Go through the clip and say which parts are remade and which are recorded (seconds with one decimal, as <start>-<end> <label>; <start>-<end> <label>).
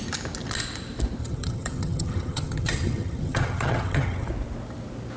0.0-1.2 recorded; 1.2-4.3 remade; 4.3-5.2 recorded